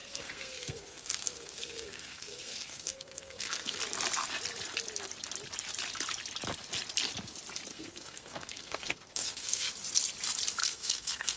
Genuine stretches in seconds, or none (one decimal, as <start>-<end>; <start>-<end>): 3.8-7.7; 9.7-10.6